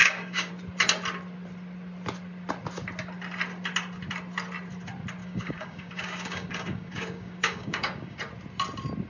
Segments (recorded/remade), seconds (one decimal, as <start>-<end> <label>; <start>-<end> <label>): 0.0-0.5 remade; 0.5-5.2 recorded; 5.2-8.2 remade; 8.2-9.1 recorded